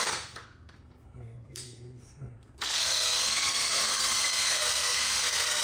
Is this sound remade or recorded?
remade